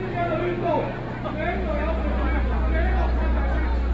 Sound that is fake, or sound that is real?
real